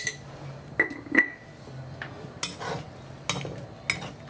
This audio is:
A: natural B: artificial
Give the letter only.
A